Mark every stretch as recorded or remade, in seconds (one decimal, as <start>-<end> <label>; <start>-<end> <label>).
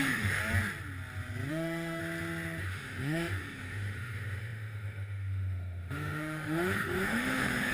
0.0-0.4 remade; 0.4-1.5 recorded; 1.5-2.0 remade; 2.0-2.6 recorded; 2.6-7.7 remade